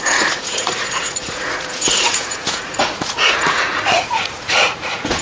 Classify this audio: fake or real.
fake